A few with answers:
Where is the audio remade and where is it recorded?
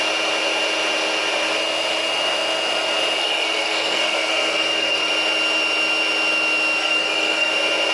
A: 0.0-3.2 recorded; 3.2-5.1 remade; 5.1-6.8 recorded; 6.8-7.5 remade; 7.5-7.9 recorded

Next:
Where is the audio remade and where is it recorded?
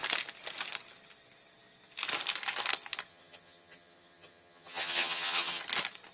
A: 0.0-3.1 recorded; 3.1-5.6 remade; 5.6-6.1 recorded